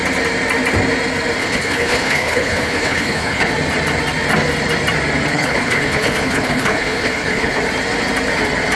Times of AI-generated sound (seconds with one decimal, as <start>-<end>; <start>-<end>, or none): 1.4-3.5; 5.3-7.6